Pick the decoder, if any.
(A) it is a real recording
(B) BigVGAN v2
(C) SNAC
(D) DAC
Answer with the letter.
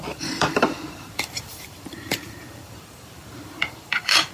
B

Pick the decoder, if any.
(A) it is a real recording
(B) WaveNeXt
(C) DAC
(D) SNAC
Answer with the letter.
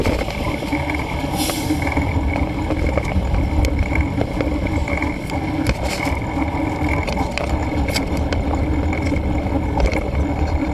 A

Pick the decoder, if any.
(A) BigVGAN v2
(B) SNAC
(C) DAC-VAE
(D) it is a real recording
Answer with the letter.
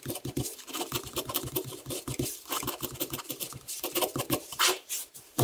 A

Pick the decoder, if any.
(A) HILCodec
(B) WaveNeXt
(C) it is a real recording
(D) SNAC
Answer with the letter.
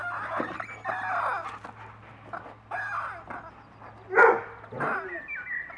C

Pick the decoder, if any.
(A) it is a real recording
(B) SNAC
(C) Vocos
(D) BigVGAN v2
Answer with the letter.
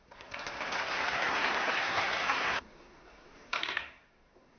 B